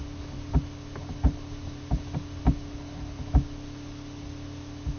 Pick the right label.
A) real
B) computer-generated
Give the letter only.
A